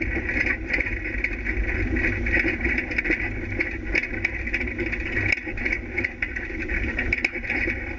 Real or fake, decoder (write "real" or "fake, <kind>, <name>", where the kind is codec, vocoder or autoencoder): real